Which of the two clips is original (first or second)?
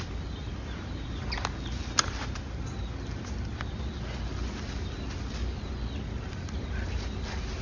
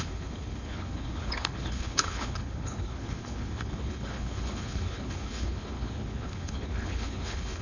first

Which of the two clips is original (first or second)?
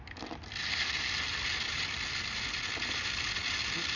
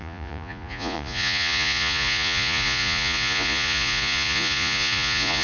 first